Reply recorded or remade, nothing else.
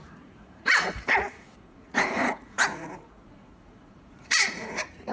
remade